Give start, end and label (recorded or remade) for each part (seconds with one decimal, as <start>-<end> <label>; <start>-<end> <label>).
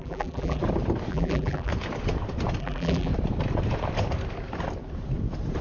0.0-0.6 remade; 0.6-1.1 recorded; 1.1-1.7 remade; 1.7-2.6 recorded; 2.6-3.1 remade; 3.1-5.6 recorded